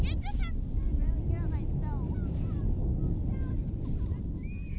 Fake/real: real